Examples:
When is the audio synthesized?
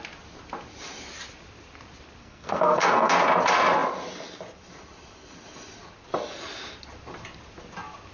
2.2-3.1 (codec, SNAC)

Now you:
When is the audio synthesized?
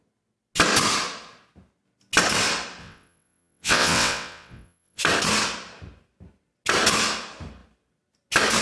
2.8-5.0 (vocoder, WaveNeXt)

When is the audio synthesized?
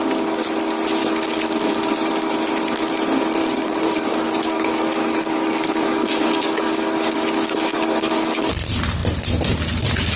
1.0-1.9 (codec, DAC); 3.4-8.5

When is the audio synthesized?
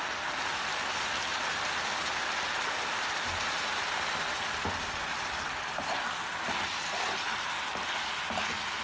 none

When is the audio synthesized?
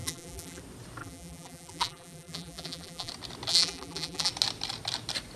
0.0-0.6 (vocoder, BigVGAN v2); 1.0-3.1; 3.5-4.3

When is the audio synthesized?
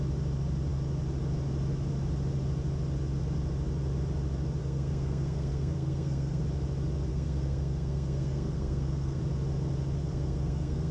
4.6-6.4 (codec, SNAC); 7.1-9.2; 10.0-10.9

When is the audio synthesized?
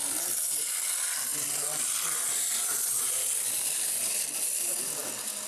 0.0-5.0 (vocoder, BigVGAN v2)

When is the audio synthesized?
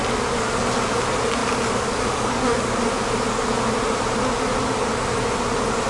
1.4-2.8 (codec, DAC)